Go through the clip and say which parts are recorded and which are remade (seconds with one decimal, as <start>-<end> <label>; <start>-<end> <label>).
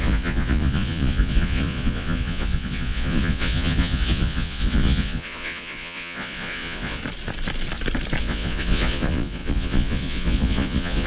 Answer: 0.0-7.0 remade; 7.0-8.2 recorded; 8.2-11.1 remade